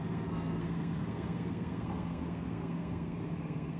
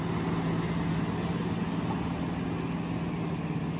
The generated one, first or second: first